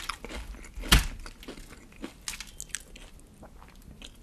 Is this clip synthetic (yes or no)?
no